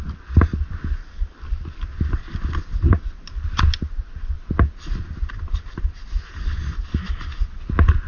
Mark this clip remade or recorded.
recorded